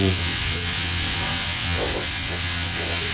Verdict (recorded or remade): remade